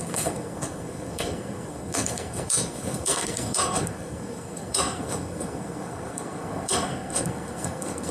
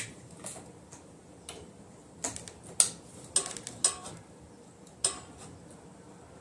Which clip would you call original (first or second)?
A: second